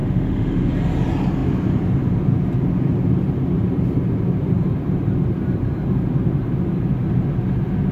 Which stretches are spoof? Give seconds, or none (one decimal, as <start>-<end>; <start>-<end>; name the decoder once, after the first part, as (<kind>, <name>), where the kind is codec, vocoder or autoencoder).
0.0-0.7 (autoencoder, DAC-VAE)